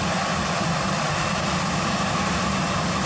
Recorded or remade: remade